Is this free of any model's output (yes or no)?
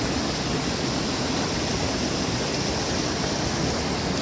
yes